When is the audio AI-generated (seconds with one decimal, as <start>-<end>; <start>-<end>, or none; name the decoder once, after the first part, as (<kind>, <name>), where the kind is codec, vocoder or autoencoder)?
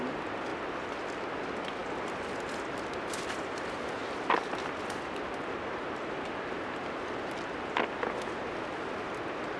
none